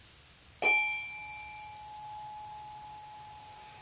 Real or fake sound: real